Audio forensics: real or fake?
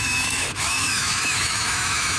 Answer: fake